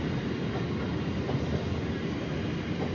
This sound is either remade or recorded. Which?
recorded